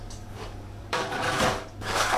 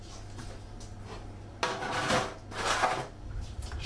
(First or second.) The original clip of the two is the second